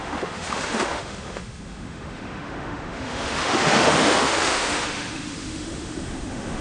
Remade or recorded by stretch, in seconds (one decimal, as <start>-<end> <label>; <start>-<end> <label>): 0.0-6.6 remade